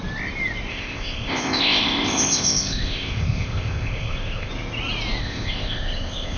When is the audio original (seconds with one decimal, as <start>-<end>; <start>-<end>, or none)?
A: 0.0-0.7; 4.5-5.2